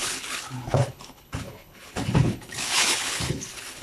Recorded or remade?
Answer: remade